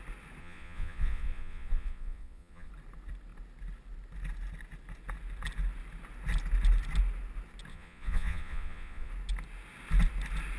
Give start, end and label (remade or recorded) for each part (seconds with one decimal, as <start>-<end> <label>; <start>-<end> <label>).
0.0-0.4 recorded; 0.4-2.7 remade; 2.7-7.7 recorded; 7.7-9.1 remade; 9.1-10.6 recorded